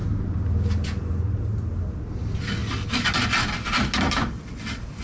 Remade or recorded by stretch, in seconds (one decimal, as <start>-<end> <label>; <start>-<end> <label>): 0.0-5.0 recorded

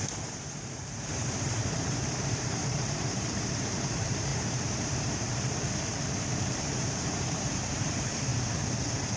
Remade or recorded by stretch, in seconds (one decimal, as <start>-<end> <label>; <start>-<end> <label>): 0.0-8.3 remade; 8.3-9.2 recorded

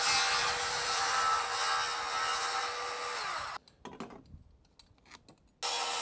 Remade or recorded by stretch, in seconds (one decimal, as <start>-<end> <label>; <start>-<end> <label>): 0.0-0.4 recorded; 0.4-1.2 remade; 1.2-6.0 recorded

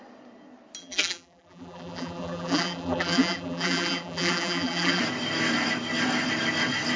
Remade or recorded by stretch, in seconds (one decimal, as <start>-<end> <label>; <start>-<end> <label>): 0.0-0.8 recorded; 0.8-5.0 remade; 5.0-7.0 recorded

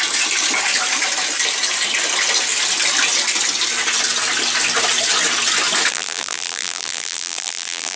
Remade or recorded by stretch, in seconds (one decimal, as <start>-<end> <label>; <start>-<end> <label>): 0.0-5.9 recorded; 5.9-8.0 remade

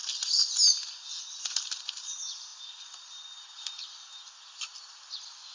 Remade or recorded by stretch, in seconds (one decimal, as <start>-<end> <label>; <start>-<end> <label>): 0.0-0.5 remade; 0.5-2.5 recorded; 2.5-3.2 remade; 3.2-5.5 recorded

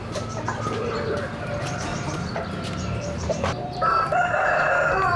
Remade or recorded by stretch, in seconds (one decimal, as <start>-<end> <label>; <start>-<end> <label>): 0.0-1.9 recorded; 1.9-4.4 remade; 4.4-5.2 recorded